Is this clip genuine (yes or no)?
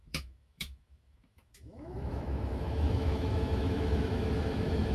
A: no